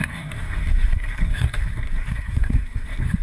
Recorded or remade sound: remade